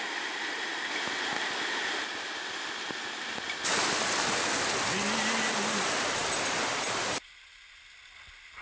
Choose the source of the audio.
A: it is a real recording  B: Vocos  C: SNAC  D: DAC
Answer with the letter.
A